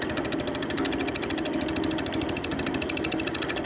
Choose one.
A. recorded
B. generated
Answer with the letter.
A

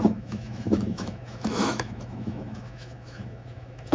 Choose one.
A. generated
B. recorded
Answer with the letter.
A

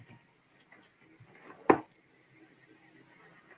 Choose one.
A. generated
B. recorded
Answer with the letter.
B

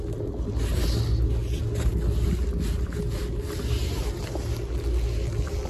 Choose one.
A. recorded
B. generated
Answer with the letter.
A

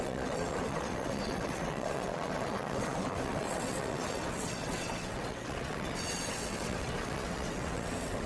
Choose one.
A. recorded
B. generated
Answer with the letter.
B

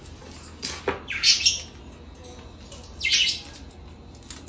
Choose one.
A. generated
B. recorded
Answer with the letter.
B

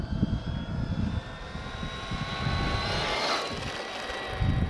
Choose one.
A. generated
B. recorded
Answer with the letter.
B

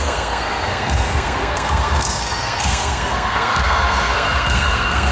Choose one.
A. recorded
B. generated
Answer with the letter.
B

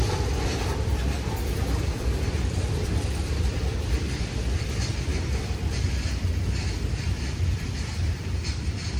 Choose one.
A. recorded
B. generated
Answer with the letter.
B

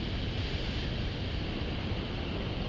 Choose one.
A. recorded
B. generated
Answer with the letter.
A